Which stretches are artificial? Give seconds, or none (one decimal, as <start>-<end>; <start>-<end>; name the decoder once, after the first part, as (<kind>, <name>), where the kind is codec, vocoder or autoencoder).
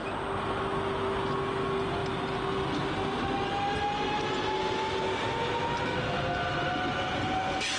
none